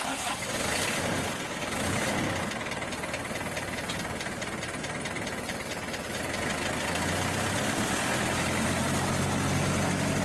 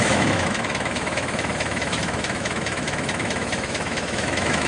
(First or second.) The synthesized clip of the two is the second